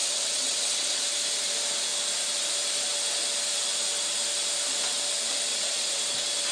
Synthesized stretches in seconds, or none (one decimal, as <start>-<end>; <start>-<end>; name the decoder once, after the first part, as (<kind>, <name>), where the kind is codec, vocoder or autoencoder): 0.0-1.0 (vocoder, WaveNeXt); 5.5-6.0